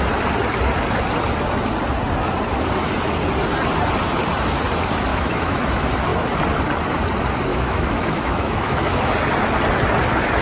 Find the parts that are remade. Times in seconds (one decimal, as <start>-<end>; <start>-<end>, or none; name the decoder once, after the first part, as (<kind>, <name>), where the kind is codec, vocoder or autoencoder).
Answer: 5.1-5.6 (autoencoder, DAC-VAE); 7.5-9.1